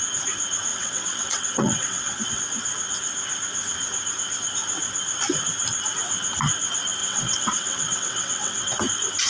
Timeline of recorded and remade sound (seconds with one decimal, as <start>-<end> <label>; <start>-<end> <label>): 0.0-0.7 recorded; 0.7-2.4 remade; 2.4-7.0 recorded; 7.0-8.8 remade; 8.8-9.3 recorded